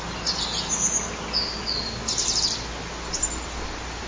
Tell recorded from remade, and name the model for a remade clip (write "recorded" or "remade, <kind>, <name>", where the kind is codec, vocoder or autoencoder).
recorded